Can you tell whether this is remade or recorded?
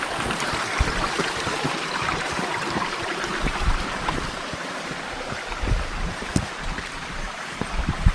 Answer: remade